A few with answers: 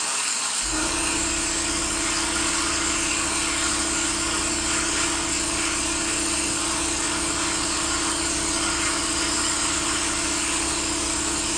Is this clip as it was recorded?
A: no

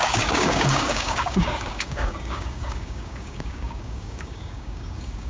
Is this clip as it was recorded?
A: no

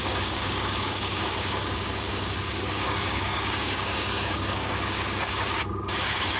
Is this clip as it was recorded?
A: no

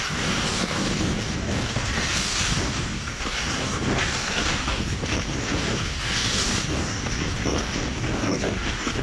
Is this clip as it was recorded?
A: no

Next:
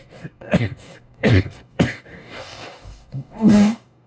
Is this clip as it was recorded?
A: no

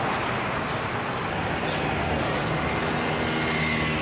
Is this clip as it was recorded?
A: yes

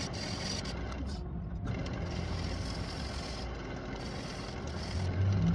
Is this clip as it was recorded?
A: yes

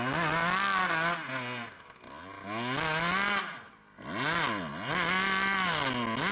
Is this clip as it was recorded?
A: yes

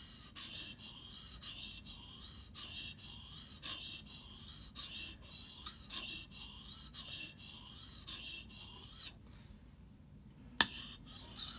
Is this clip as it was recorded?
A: yes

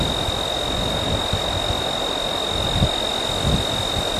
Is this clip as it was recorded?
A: yes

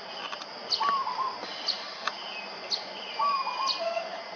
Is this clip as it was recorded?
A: yes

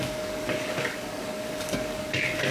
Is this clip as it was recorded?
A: no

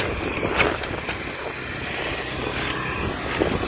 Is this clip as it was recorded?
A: yes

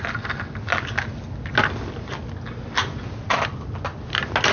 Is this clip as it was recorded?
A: yes